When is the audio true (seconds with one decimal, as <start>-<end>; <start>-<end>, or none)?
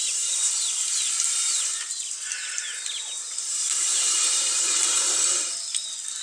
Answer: 0.5-1.4; 5.1-6.2